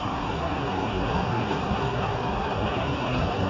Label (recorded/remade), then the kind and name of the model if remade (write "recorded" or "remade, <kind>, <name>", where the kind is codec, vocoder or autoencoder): remade, codec, SNAC